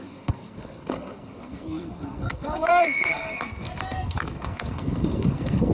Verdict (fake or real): fake